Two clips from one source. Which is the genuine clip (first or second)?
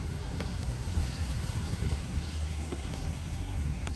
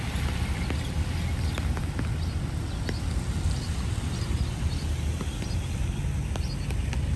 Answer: second